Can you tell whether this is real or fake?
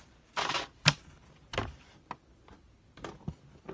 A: real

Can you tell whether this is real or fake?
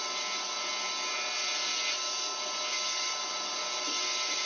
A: real